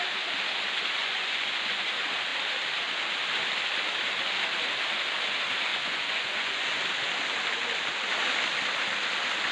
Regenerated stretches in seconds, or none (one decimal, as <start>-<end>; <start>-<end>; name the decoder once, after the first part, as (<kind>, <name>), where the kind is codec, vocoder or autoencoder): 1.0-1.9 (vocoder, Vocos); 5.7-6.8